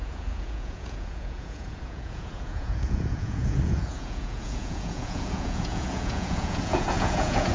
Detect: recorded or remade remade